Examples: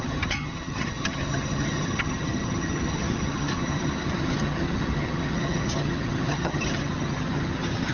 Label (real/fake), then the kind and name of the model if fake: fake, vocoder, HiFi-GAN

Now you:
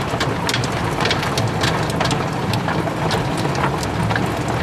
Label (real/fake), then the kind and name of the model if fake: real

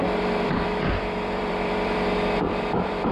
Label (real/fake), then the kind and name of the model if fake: fake, vocoder, BigVGAN v2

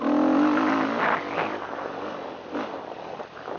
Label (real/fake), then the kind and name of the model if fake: real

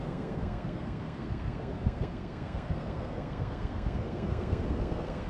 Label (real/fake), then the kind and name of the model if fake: fake, codec, SNAC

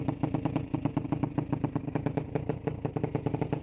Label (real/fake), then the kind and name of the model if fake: real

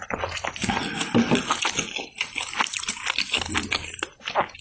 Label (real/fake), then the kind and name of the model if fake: real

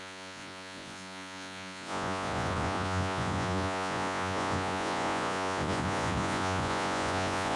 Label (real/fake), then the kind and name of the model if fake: fake, vocoder, Vocos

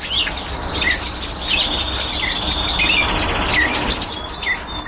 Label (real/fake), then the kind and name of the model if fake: real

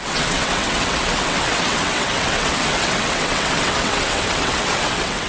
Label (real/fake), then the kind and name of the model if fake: fake, vocoder, WaveNeXt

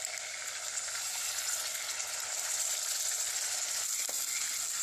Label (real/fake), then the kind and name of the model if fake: real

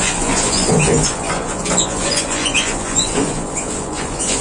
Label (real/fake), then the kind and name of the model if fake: fake, vocoder, Vocos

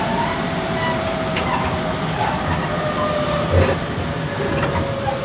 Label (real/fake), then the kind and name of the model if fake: fake, vocoder, BigVGAN v2